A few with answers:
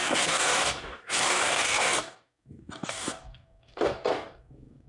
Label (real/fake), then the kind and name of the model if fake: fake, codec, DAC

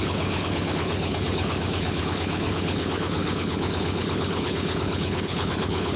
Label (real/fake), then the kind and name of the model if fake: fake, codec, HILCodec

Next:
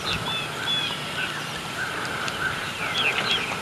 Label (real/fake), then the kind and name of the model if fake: real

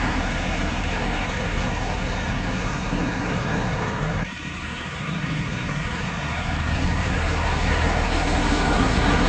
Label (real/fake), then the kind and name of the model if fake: fake, codec, SNAC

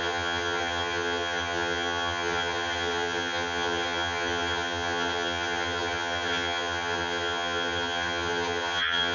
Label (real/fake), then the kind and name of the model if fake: fake, vocoder, HiFi-GAN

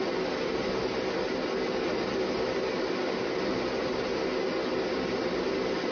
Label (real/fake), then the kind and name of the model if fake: real